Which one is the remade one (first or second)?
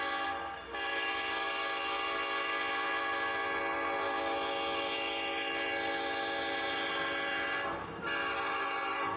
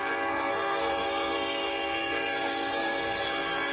second